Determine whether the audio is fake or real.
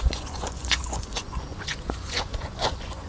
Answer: fake